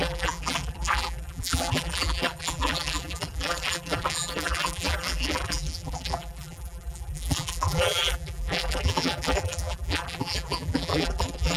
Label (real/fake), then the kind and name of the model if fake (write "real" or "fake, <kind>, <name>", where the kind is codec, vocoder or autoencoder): fake, vocoder, BigVGAN v2